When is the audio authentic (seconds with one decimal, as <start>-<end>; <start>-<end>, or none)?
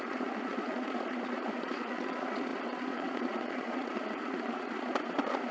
none